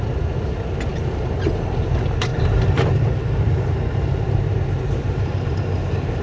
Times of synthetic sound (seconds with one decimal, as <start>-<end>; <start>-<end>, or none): 0.9-1.5; 2.3-6.2